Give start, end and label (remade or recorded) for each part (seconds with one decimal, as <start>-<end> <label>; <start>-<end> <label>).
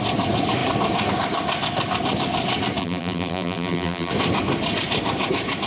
0.0-2.8 recorded; 2.8-4.1 remade; 4.1-5.7 recorded